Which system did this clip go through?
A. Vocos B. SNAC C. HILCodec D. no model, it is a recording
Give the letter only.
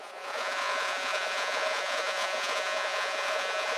A